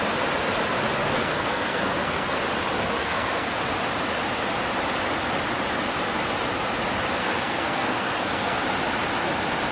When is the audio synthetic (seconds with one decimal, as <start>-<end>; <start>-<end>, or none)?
1.0-2.4; 3.0-3.6; 7.2-8.6